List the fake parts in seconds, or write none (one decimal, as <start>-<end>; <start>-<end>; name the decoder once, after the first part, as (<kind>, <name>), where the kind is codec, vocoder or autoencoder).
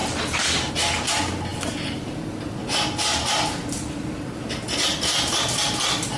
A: none